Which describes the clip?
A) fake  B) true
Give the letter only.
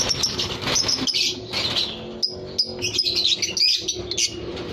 B